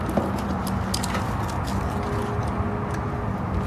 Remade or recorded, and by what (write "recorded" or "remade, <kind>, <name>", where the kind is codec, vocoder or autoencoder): recorded